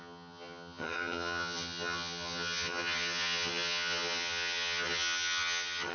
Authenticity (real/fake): fake